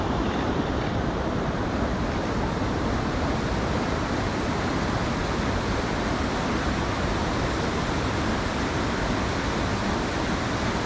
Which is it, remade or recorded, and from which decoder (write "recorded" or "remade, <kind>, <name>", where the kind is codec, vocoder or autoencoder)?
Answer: recorded